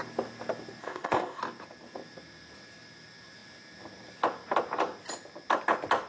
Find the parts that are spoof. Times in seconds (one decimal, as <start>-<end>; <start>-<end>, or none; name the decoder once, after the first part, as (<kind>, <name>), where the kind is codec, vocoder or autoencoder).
0.8-1.4 (codec, ZipCodec)